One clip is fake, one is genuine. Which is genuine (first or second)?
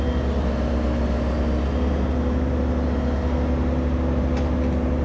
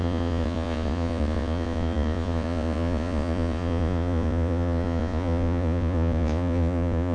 first